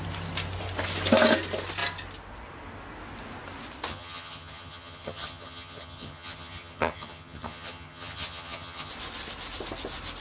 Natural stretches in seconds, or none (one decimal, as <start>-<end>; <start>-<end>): 0.0-3.9; 8.9-10.2